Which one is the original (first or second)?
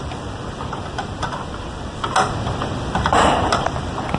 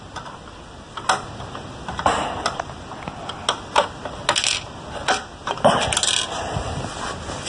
second